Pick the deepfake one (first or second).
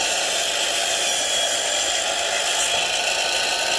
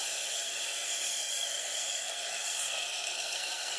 second